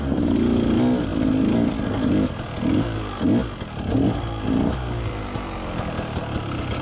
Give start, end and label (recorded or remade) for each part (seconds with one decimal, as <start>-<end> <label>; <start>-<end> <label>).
0.0-6.8 recorded